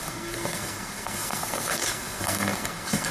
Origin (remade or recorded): remade